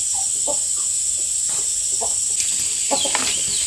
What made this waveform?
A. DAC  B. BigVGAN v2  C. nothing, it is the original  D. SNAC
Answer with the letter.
C